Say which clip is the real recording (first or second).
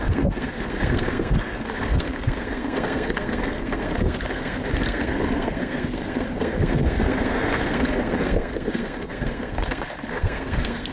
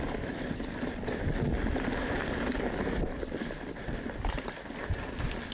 second